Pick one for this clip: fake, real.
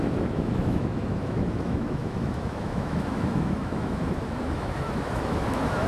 fake